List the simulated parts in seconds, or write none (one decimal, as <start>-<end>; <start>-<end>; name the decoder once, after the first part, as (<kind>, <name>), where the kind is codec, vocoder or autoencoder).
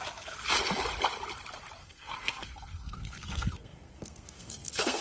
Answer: 1.8-5.0 (codec, SNAC)